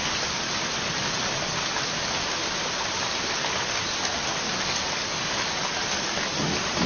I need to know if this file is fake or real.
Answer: real